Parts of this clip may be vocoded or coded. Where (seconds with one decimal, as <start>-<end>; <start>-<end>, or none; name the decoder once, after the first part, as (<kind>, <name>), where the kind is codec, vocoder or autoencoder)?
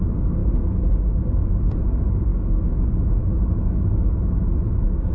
none